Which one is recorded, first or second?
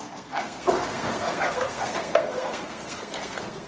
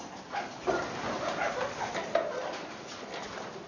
second